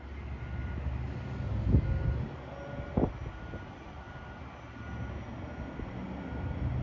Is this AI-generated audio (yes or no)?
no